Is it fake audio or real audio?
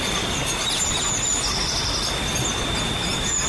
real